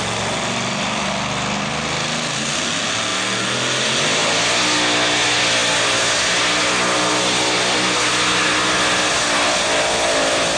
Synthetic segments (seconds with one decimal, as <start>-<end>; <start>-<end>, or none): none